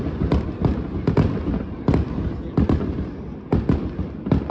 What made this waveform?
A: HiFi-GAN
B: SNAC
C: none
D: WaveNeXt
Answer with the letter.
C